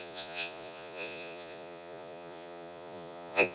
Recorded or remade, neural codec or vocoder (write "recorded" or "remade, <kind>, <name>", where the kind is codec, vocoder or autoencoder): remade, vocoder, Vocos